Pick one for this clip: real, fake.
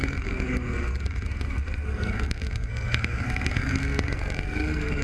fake